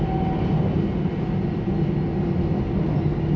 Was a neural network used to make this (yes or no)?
no